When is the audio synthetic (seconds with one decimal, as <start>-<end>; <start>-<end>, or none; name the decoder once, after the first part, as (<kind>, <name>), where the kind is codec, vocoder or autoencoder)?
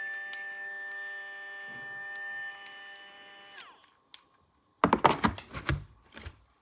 5.7-6.6 (vocoder, BigVGAN v2)